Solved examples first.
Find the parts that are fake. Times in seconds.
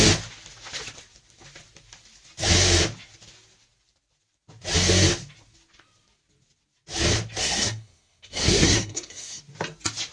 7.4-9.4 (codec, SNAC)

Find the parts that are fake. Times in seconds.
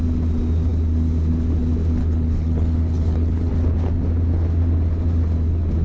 2.0-3.5 (codec, HILCodec)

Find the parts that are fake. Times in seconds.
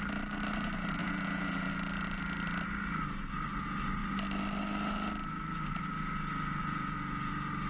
1.0-1.7 (vocoder, Vocos); 6.6-7.3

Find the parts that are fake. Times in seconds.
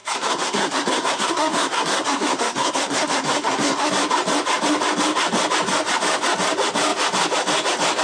0.0-3.9 (codec, SNAC)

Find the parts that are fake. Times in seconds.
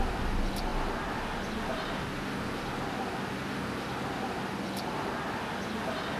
none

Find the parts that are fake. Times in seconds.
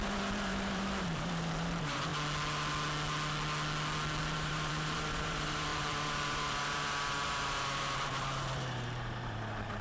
0.0-2.1 (vocoder, BigVGAN v2); 4.2-9.8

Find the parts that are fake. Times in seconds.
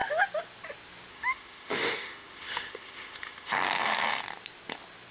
1.1-4.2 (autoencoder, DAC-VAE)